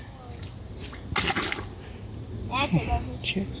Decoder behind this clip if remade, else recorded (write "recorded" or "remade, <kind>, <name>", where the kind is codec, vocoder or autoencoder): recorded